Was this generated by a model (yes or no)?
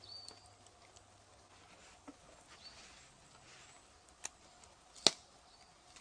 no